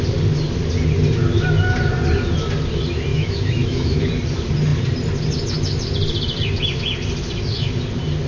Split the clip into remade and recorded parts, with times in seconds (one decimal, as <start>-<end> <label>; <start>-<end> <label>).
0.0-3.1 recorded; 3.1-4.1 remade; 4.1-8.3 recorded